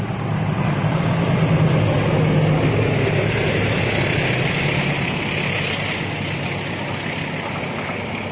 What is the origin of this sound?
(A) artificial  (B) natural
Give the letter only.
B